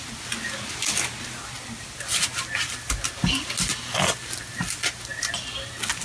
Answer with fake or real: real